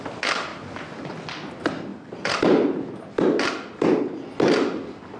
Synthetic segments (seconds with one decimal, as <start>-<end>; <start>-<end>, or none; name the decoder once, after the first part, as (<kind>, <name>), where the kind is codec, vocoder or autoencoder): none